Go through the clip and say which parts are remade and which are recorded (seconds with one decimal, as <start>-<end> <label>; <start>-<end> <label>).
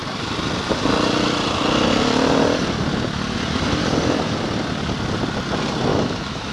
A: 0.0-5.9 recorded; 5.9-6.5 remade